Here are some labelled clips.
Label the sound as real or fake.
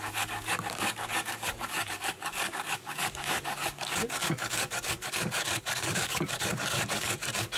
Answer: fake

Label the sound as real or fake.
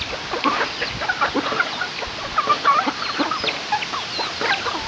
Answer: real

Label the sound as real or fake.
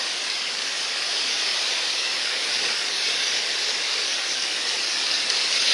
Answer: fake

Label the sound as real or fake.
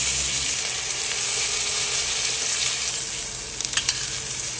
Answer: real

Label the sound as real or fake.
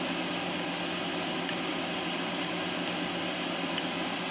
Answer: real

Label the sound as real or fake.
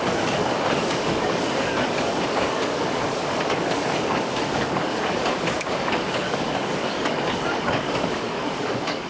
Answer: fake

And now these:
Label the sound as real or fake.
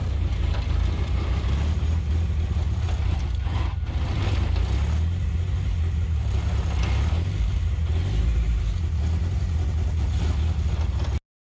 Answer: real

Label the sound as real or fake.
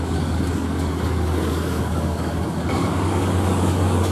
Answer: fake